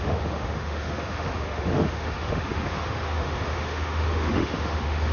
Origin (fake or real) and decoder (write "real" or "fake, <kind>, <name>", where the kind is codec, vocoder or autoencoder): fake, autoencoder, DAC-VAE